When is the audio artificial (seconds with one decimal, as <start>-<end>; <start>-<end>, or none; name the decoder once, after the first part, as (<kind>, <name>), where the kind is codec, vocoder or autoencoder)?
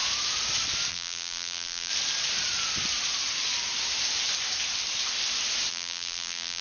0.9-1.9 (vocoder, BigVGAN v2); 5.7-6.6